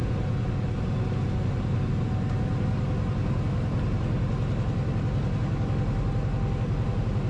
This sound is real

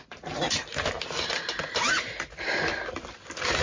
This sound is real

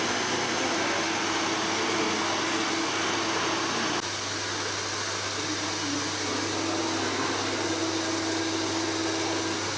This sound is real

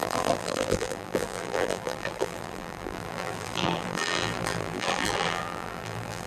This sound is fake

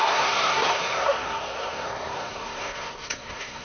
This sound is fake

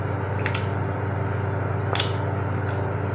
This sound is real